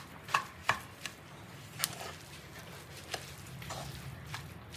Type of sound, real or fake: real